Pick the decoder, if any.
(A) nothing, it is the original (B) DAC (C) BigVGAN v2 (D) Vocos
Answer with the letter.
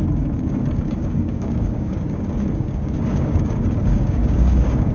B